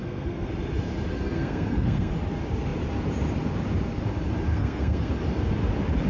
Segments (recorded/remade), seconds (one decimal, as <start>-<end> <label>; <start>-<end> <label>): 0.0-0.5 remade; 0.5-1.1 recorded; 1.1-2.1 remade; 2.1-4.5 recorded; 4.5-5.1 remade; 5.1-6.1 recorded